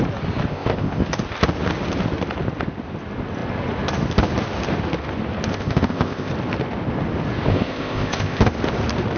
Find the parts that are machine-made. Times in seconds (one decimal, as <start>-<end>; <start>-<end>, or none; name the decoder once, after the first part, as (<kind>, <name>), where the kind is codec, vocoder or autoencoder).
0.5-1.1 (codec, ZipCodec); 5.5-6.3; 7.5-8.4